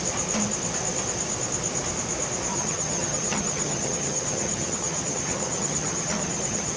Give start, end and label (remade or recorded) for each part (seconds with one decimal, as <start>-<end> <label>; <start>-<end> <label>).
0.0-2.5 recorded; 2.5-6.8 remade